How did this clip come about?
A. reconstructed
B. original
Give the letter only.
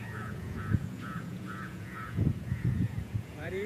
A